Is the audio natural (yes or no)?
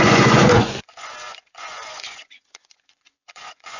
no